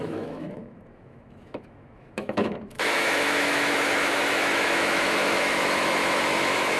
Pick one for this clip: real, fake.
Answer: fake